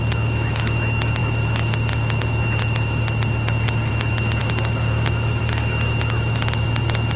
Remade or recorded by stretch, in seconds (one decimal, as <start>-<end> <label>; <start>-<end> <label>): 0.0-7.2 remade